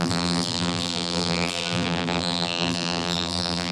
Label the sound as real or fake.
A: fake